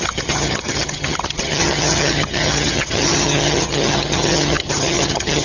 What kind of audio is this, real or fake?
fake